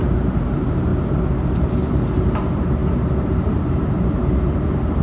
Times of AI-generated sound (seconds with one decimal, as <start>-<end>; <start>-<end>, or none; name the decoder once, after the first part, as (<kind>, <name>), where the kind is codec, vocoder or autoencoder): 0.0-0.9 (vocoder, BigVGAN v2); 1.6-5.0